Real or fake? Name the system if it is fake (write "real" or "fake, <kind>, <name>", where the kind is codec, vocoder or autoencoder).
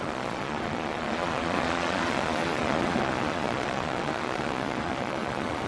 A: fake, vocoder, Vocos